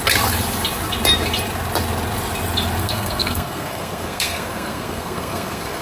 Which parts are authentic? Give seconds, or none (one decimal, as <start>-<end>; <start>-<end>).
0.0-2.8